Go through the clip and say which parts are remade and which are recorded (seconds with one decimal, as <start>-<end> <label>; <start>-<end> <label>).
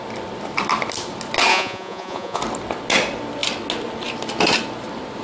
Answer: 0.0-1.5 recorded; 1.5-2.4 remade; 2.4-5.2 recorded